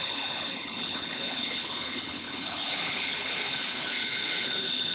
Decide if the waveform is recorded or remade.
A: remade